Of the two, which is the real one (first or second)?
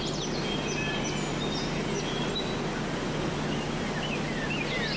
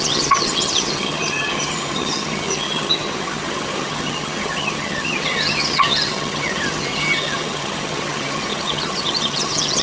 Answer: first